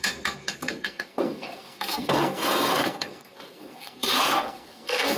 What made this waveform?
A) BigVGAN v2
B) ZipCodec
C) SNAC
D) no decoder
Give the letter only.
C